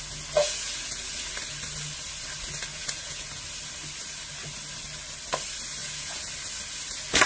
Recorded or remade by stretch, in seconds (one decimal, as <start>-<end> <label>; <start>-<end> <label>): 0.0-0.4 recorded; 0.4-1.1 remade; 1.1-2.7 recorded; 2.7-3.4 remade; 3.4-5.8 recorded; 5.8-6.3 remade; 6.3-7.3 recorded